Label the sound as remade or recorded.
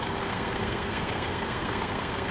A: remade